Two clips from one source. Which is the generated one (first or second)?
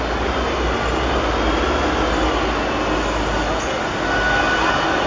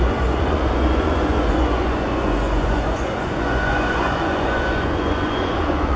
second